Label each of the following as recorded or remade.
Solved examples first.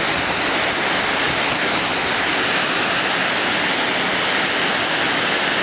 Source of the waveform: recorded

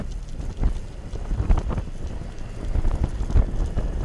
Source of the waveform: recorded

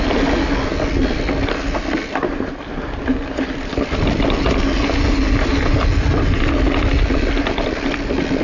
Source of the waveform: recorded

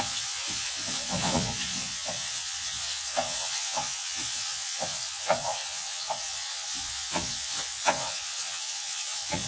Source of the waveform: remade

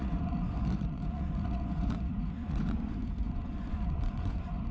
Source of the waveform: remade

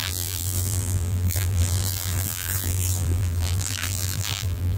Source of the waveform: remade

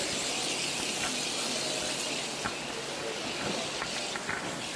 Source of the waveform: recorded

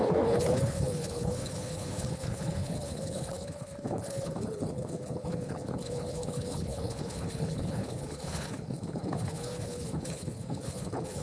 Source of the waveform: remade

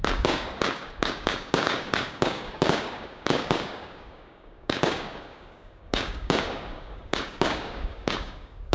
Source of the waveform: remade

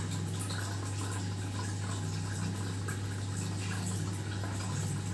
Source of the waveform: recorded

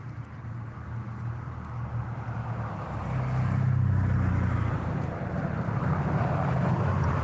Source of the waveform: recorded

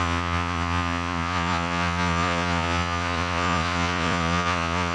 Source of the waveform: remade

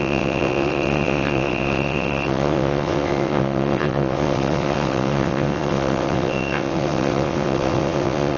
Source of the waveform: remade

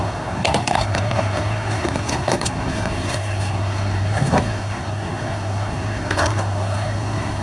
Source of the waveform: remade